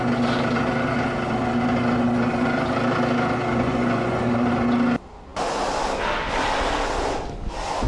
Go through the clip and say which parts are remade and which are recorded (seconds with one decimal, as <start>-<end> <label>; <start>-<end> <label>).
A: 0.0-3.5 recorded; 3.5-4.5 remade; 4.5-7.9 recorded